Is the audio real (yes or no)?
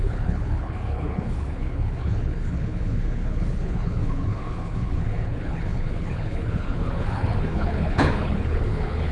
no